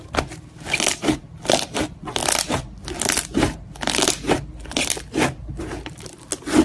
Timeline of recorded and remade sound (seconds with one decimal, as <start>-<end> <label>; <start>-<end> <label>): 0.0-6.6 recorded